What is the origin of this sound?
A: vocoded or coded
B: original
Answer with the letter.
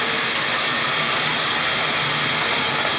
B